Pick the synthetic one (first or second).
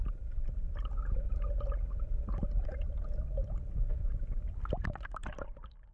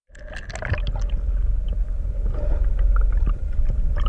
first